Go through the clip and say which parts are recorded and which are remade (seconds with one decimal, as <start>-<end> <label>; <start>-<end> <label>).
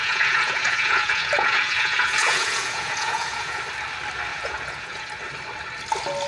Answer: 0.0-3.6 remade; 3.6-4.3 recorded; 4.3-5.1 remade; 5.1-6.3 recorded